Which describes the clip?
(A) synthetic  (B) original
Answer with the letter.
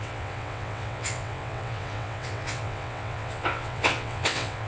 A